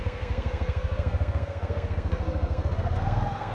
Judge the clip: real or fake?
fake